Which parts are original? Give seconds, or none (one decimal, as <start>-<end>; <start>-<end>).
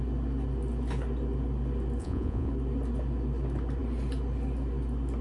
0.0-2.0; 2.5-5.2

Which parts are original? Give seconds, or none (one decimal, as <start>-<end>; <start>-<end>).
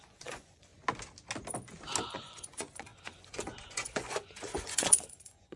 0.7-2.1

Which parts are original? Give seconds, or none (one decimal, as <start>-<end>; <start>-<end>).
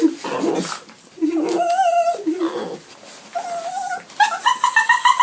0.0-5.2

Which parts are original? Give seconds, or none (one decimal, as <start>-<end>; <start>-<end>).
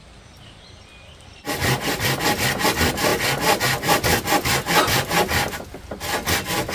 2.2-6.7